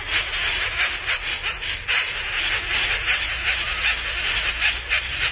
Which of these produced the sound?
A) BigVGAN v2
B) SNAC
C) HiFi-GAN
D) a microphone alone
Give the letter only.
D